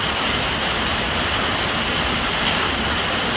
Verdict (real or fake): real